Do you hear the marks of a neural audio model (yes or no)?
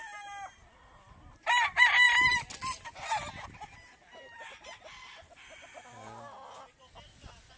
no